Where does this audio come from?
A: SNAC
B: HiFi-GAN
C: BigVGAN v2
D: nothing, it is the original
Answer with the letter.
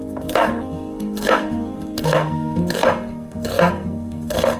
A